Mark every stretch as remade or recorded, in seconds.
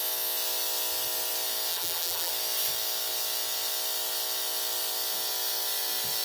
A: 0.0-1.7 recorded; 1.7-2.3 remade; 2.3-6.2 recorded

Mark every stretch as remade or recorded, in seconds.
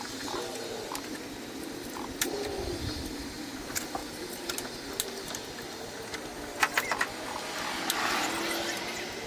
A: 0.0-9.3 recorded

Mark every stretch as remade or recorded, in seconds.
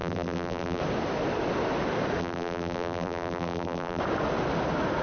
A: 0.0-0.8 remade; 0.8-2.2 recorded; 2.2-4.0 remade; 4.0-5.0 recorded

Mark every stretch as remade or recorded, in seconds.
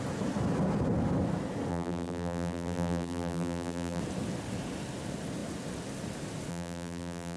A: 0.0-1.7 recorded; 1.7-4.0 remade; 4.0-6.5 recorded; 6.5-7.4 remade